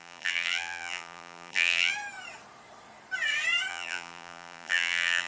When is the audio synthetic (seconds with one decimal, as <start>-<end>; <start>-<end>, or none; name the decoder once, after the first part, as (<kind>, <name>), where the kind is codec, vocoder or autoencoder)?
0.0-1.9 (vocoder, BigVGAN v2); 3.7-5.3